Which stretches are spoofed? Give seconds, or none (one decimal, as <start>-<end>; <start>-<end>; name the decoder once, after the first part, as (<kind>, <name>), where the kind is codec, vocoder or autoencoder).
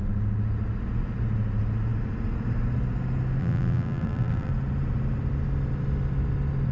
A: 3.4-4.5 (vocoder, BigVGAN v2)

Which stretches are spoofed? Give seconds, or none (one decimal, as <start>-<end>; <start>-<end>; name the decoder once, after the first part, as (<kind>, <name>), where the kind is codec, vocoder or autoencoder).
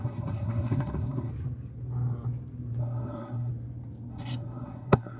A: 0.0-1.3 (codec, SNAC); 2.8-3.5; 4.1-5.2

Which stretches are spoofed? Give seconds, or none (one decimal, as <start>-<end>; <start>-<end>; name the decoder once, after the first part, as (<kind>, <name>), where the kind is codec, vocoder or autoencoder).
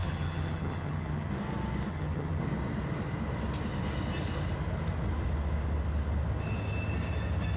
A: 0.0-1.3 (vocoder, HiFi-GAN); 1.9-2.4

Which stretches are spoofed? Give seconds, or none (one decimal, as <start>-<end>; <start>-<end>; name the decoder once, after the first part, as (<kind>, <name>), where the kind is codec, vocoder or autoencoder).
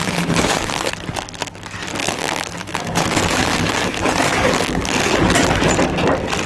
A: 0.0-0.9 (codec, DAC); 2.0-5.1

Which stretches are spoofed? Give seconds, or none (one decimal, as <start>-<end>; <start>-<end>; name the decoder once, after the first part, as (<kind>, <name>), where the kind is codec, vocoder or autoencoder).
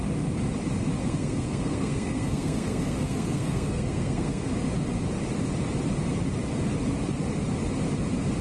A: 1.0-4.5 (codec, SNAC)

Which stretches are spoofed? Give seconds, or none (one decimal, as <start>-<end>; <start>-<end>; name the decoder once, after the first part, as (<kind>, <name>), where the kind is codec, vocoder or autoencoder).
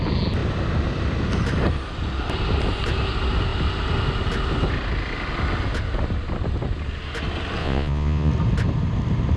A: 7.6-8.3 (vocoder, Vocos)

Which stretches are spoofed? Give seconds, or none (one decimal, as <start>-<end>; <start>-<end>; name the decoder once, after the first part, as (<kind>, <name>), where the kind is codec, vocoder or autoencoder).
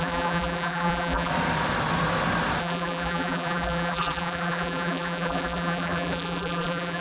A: 0.0-1.3 (vocoder, BigVGAN v2); 2.6-7.0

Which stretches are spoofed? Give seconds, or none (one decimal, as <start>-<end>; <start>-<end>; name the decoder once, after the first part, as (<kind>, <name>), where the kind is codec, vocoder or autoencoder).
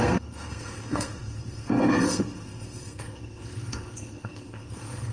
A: 0.0-5.1 (codec, SNAC)